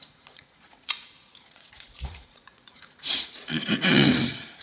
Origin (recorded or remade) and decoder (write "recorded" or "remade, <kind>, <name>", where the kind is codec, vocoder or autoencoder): remade, vocoder, Vocos